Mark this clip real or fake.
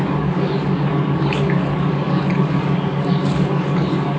fake